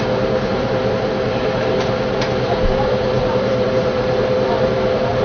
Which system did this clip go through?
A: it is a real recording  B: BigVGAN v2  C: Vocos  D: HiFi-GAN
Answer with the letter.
B